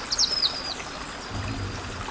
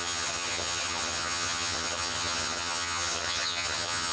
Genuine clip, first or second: first